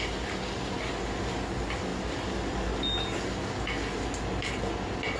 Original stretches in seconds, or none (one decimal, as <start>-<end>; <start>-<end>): 0.0-5.2